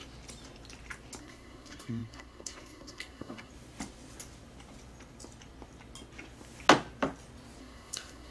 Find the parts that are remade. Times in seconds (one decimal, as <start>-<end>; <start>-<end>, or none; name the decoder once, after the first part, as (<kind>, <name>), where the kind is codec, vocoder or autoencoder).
1.2-3.5 (codec, SNAC); 7.6-8.3